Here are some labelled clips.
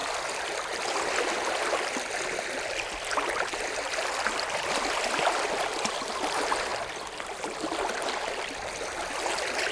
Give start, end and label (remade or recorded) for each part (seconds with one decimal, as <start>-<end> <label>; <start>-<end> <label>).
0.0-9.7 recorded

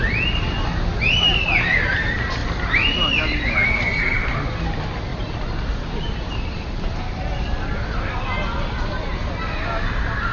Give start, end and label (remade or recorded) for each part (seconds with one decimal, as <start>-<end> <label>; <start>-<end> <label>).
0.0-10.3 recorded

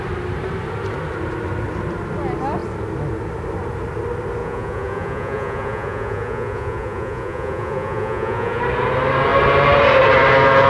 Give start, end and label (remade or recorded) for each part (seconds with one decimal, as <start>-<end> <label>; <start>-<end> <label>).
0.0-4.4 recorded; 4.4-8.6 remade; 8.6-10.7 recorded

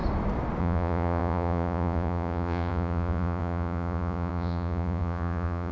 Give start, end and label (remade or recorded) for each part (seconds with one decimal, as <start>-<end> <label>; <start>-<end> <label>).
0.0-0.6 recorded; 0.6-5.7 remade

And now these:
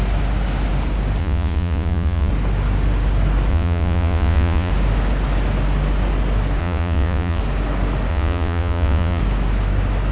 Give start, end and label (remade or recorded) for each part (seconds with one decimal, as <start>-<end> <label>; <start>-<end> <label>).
0.0-1.2 recorded; 1.2-2.3 remade; 2.3-3.5 recorded; 3.5-4.7 remade; 4.7-6.6 recorded; 6.6-7.4 remade; 7.4-8.1 recorded; 8.1-9.2 remade; 9.2-10.1 recorded